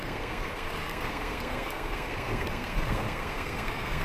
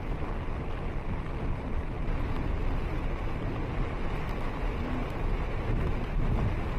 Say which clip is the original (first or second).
second